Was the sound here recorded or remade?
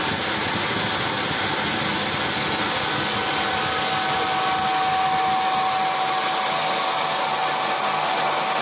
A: recorded